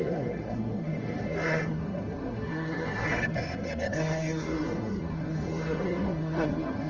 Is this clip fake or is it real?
fake